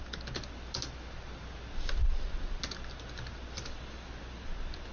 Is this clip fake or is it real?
real